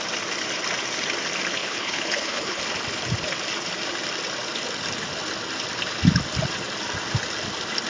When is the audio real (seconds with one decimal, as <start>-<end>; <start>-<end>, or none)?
0.0-1.6; 2.6-7.9